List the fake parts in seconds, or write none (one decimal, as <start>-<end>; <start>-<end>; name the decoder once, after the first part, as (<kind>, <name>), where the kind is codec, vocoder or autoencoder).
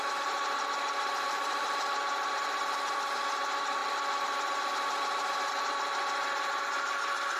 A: none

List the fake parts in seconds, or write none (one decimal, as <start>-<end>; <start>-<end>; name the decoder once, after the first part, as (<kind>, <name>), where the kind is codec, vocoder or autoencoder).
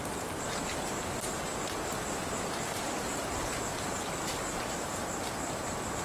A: none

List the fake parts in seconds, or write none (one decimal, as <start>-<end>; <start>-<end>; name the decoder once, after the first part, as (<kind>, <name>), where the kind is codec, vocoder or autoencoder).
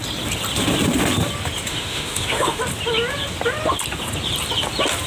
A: 1.7-2.6 (autoencoder, DAC-VAE)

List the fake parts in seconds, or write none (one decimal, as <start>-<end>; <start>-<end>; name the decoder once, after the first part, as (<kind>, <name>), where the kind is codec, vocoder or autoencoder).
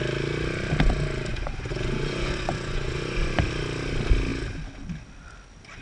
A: 1.3-3.5 (vocoder, Vocos)